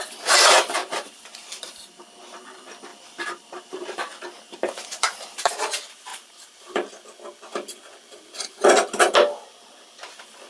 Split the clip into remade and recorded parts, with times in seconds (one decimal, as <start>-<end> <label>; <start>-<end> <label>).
0.0-0.8 recorded; 0.8-2.0 remade; 2.0-2.9 recorded; 2.9-5.6 remade; 5.6-6.1 recorded; 6.1-6.9 remade; 6.9-10.5 recorded